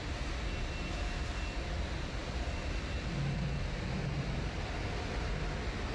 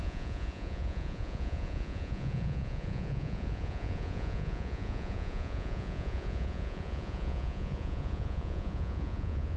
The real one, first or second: first